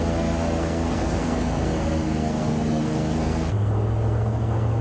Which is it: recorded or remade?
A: remade